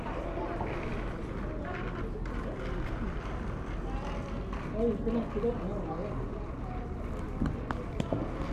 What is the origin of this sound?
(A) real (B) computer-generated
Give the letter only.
A